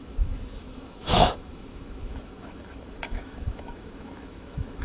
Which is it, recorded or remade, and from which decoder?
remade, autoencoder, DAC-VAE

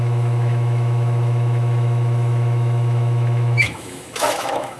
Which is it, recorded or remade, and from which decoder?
remade, autoencoder, DAC-VAE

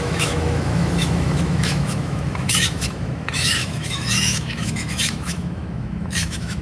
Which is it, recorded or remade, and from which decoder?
remade, autoencoder, DAC-VAE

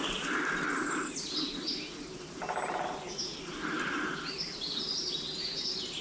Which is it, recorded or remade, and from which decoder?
recorded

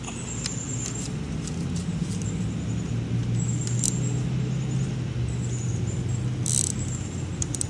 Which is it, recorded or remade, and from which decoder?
recorded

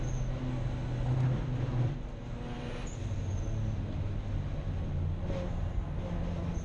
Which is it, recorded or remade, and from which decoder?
recorded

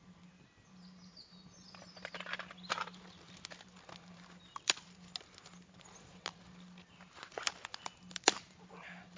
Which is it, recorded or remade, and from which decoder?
recorded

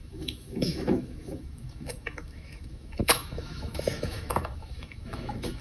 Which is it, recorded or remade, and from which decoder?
remade, autoencoder, DAC-VAE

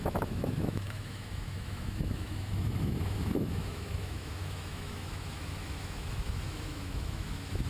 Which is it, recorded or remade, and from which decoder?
remade, autoencoder, DAC-VAE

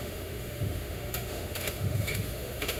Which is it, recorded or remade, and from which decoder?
remade, autoencoder, DAC-VAE